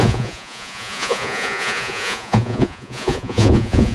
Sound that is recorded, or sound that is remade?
remade